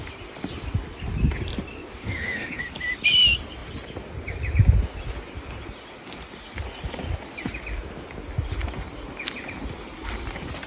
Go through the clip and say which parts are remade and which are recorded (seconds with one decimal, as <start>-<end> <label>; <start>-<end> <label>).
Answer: 0.0-1.9 recorded; 1.9-2.6 remade; 2.6-10.7 recorded